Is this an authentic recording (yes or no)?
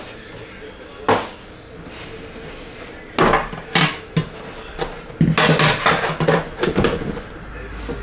yes